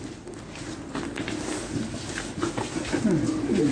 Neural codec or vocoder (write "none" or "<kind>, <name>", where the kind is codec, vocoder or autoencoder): none